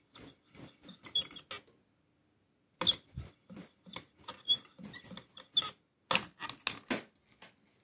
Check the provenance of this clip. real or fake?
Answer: real